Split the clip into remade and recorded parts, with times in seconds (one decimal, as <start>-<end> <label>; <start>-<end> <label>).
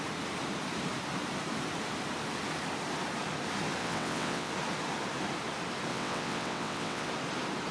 0.0-3.8 recorded; 3.8-4.5 remade; 4.5-5.9 recorded; 5.9-7.1 remade; 7.1-7.7 recorded